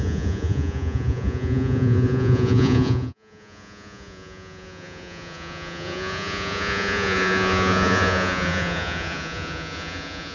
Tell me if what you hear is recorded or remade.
remade